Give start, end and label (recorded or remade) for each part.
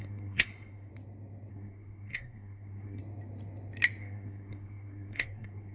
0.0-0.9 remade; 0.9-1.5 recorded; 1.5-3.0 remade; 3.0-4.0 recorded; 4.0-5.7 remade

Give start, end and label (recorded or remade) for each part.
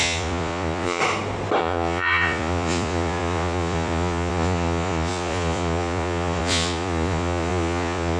0.0-1.0 remade; 1.0-1.6 recorded; 1.6-8.2 remade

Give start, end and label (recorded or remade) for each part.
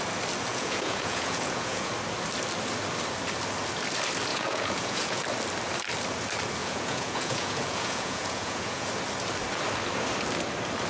0.0-0.5 recorded; 0.5-1.9 remade; 1.9-4.3 recorded; 4.3-5.2 remade; 5.2-6.6 recorded; 6.6-8.9 remade; 8.9-10.9 recorded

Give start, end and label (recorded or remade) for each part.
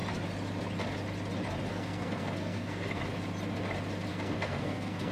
0.0-1.7 recorded; 1.7-3.0 remade; 3.0-4.1 recorded; 4.1-5.1 remade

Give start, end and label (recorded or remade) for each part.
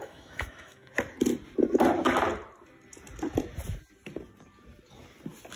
0.0-0.9 remade; 0.9-5.6 recorded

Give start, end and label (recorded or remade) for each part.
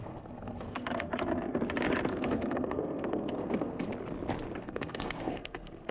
0.0-1.1 remade; 1.1-2.1 recorded; 2.1-3.9 remade; 3.9-4.6 recorded; 4.6-5.9 remade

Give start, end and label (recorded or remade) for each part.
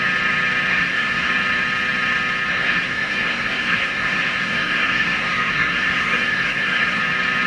0.0-0.7 recorded; 0.7-1.3 remade; 1.3-2.5 recorded; 2.5-7.0 remade; 7.0-7.5 recorded